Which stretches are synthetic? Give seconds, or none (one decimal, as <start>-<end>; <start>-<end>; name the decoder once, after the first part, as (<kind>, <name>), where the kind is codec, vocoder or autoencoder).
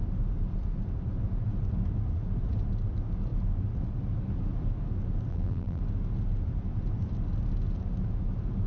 5.3-5.8 (vocoder, BigVGAN v2)